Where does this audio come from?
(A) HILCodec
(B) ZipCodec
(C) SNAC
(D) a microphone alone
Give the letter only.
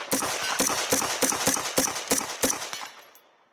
D